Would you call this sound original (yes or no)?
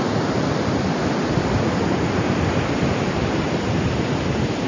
no